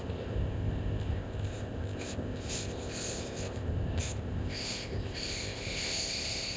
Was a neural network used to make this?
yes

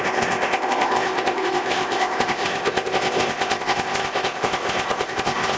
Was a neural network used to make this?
yes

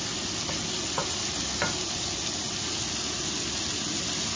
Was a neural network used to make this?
no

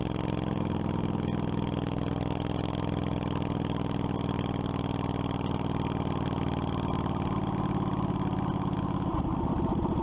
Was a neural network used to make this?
no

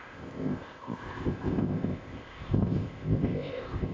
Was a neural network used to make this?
yes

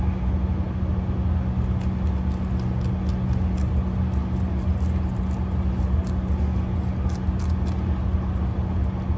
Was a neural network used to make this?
no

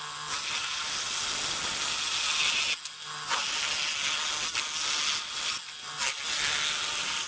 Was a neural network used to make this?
no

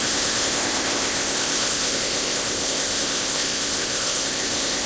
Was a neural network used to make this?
yes